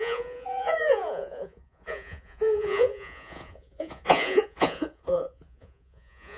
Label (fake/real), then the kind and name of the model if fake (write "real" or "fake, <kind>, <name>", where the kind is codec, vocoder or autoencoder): fake, vocoder, Vocos